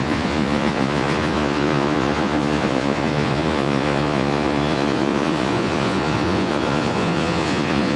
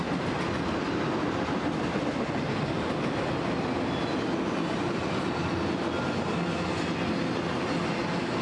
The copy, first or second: first